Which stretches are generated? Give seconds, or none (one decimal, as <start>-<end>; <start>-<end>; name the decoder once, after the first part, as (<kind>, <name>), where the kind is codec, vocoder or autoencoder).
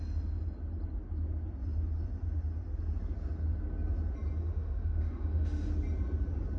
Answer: 4.4-5.7 (autoencoder, DAC-VAE)